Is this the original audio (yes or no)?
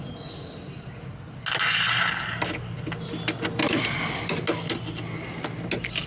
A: yes